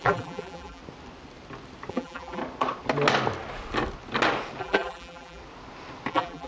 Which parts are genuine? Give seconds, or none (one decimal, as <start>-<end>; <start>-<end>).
0.8-1.9; 2.4-4.6; 5.4-6.1